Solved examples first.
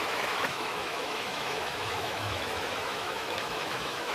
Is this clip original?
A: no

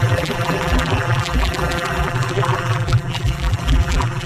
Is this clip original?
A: no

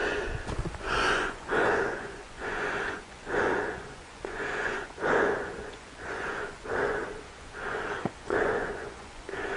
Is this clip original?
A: no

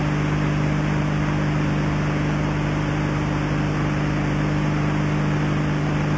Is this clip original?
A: yes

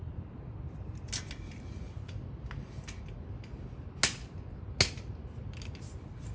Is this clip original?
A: yes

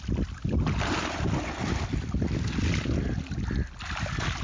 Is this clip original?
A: yes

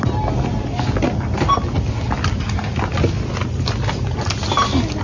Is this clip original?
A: yes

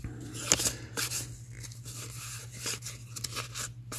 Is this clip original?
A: yes